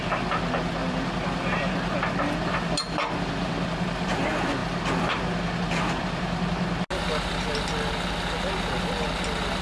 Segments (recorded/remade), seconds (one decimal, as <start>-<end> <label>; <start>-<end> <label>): 0.0-9.6 recorded